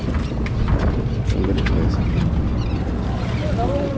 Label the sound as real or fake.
real